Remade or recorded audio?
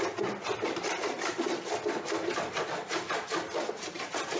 recorded